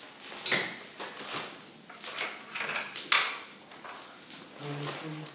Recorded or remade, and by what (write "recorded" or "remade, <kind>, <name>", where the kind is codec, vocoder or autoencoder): recorded